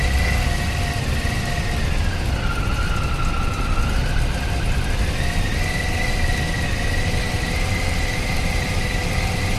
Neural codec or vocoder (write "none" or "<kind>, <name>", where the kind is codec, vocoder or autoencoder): none